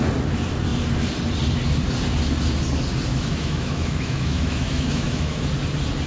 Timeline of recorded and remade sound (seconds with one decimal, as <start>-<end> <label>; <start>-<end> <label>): 0.0-3.1 recorded; 3.1-5.4 remade; 5.4-6.1 recorded

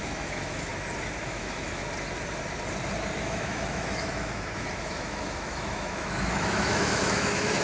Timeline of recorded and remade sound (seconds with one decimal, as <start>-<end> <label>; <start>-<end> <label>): 0.0-0.7 remade; 0.7-1.2 recorded; 1.2-1.8 remade; 1.8-3.2 recorded; 3.2-7.6 remade

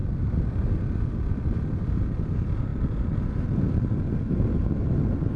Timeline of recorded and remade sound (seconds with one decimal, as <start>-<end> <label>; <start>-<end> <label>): 0.0-5.4 recorded

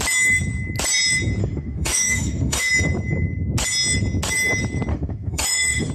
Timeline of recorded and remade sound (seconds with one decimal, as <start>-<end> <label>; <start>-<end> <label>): 0.0-1.4 recorded; 1.4-2.7 remade; 2.7-4.9 recorded; 4.9-5.9 remade

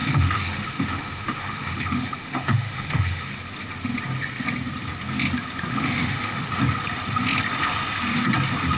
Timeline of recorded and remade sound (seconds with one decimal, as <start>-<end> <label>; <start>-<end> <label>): 0.0-3.3 remade; 3.3-5.7 recorded; 5.7-6.6 remade; 6.6-8.8 recorded

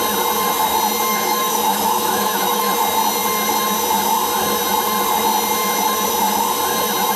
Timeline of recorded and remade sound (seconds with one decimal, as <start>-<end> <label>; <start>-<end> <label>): 0.0-1.1 recorded; 1.1-2.7 remade; 2.7-7.2 recorded